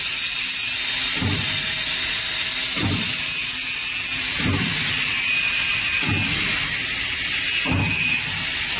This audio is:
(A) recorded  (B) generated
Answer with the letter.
A